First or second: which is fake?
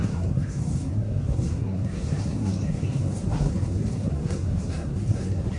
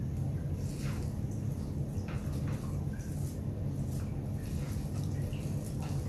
first